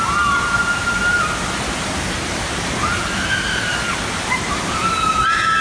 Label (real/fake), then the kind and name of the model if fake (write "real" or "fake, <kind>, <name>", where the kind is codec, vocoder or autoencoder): real